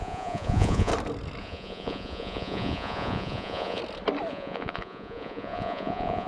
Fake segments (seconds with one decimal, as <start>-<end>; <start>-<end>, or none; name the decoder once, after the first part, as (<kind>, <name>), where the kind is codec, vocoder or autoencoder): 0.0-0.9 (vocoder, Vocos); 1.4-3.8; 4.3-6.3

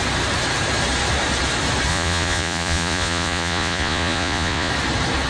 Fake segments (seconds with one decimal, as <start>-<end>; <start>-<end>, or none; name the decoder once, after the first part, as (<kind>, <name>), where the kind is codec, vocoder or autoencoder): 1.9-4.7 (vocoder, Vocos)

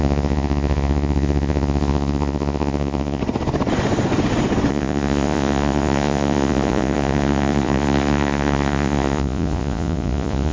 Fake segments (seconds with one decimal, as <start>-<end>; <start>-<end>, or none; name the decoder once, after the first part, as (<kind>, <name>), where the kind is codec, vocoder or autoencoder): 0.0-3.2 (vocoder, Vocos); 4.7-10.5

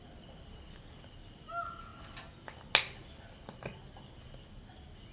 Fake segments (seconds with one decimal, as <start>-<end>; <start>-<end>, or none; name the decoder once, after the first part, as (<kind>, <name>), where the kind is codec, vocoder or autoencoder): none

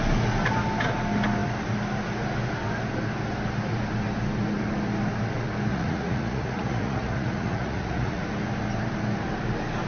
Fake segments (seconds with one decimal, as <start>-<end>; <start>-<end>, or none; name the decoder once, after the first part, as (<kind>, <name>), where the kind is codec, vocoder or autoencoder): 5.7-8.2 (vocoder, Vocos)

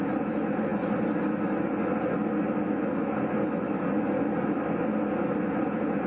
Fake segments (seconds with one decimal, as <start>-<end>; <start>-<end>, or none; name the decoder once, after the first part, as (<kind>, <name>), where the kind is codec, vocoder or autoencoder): none

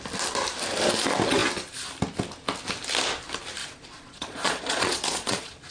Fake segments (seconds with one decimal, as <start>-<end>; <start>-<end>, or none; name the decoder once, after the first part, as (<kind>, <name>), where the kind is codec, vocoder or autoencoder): 3.6-5.7 (vocoder, Vocos)